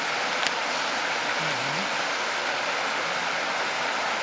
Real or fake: real